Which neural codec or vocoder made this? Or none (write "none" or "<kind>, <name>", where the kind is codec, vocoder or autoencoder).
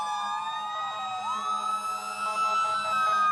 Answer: none